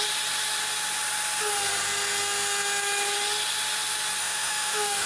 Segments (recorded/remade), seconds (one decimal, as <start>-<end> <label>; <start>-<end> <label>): 0.0-4.2 recorded; 4.2-5.1 remade